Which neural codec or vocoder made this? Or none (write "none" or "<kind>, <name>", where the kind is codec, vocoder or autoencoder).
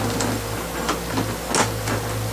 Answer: none